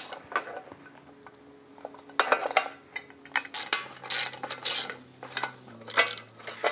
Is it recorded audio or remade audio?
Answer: recorded